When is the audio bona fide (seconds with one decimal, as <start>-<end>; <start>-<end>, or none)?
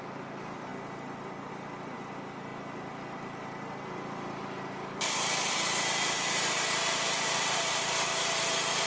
0.7-1.5